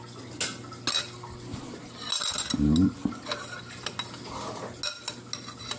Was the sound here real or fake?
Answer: real